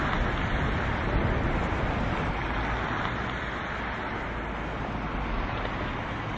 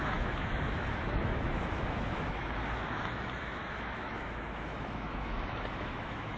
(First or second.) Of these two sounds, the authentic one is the first